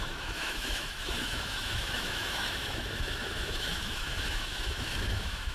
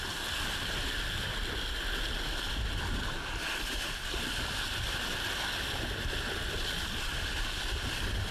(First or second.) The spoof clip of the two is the first